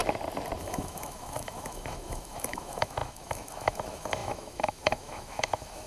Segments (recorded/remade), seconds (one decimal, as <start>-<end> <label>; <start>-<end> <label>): 0.0-0.6 recorded; 0.6-5.9 remade